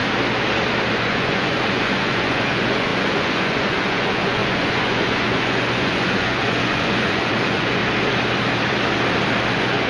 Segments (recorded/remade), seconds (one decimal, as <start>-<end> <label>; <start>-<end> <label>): 0.0-0.9 recorded; 0.9-7.8 remade; 7.8-9.5 recorded; 9.5-9.9 remade